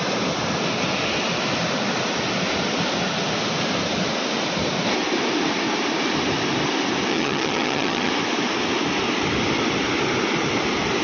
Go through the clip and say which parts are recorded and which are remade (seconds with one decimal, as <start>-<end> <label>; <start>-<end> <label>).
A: 0.0-7.1 recorded; 7.1-8.1 remade; 8.1-11.0 recorded